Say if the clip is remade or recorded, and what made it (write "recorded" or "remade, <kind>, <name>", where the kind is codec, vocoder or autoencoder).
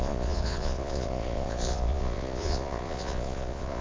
remade, vocoder, Vocos